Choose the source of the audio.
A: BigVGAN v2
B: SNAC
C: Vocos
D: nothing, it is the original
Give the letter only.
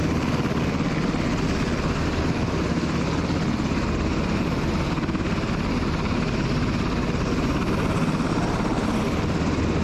D